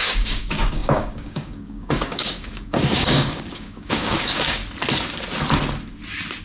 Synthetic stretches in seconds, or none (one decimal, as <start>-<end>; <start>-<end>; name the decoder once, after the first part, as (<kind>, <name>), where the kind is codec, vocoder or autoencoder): 0.0-4.6 (codec, DAC)